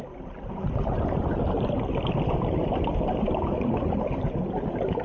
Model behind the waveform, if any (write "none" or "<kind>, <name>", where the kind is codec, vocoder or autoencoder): none